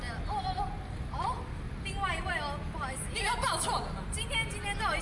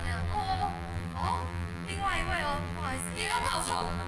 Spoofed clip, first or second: second